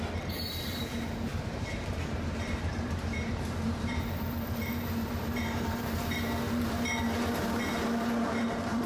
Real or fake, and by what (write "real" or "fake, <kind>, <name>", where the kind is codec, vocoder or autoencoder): fake, vocoder, BigVGAN v2